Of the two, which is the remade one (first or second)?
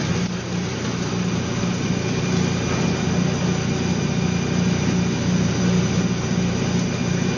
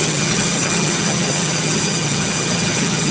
second